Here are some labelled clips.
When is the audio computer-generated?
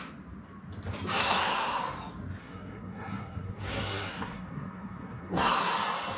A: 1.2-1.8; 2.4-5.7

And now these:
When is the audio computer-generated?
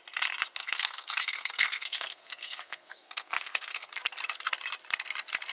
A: 0.6-3.9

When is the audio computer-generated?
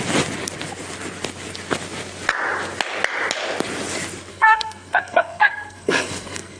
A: 4.3-6.6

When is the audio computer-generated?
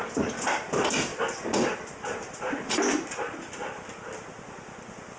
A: none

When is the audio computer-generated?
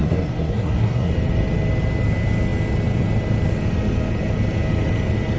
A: 0.0-1.1